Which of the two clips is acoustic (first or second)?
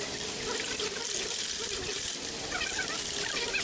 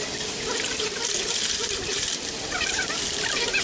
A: first